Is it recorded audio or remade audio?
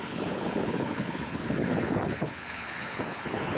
remade